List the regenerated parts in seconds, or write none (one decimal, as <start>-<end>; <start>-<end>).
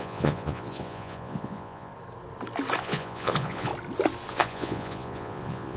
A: 0.0-1.9; 2.8-3.7; 4.3-5.8